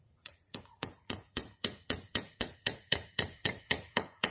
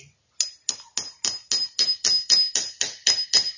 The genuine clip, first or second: second